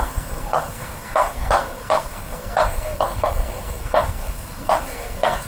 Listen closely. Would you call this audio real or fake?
fake